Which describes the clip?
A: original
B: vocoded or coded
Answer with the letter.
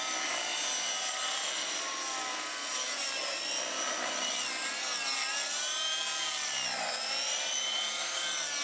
A